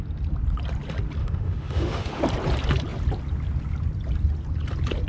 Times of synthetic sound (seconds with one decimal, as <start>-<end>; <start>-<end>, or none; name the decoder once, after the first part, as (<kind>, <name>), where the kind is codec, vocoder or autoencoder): 1.2-2.2 (autoencoder, DAC-VAE)